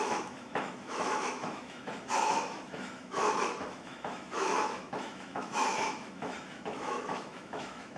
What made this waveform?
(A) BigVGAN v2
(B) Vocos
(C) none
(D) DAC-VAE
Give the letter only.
D